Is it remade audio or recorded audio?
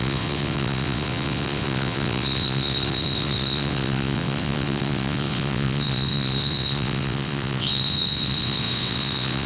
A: remade